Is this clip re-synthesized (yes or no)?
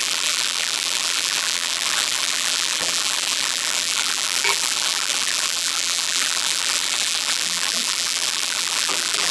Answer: yes